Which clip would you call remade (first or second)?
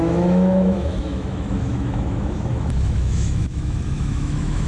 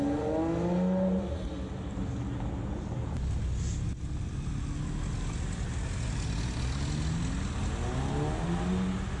first